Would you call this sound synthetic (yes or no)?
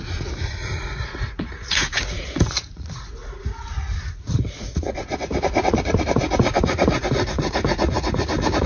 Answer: yes